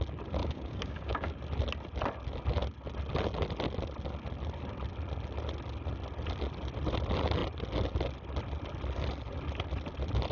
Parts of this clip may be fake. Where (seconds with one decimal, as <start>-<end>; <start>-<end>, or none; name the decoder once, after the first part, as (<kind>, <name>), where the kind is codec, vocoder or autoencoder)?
0.4-1.4 (codec, DAC)